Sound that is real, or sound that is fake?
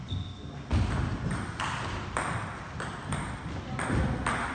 real